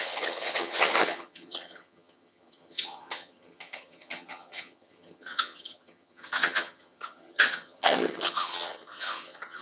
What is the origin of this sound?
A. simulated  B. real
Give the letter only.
A